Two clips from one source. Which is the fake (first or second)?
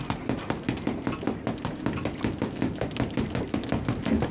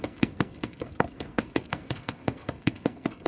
second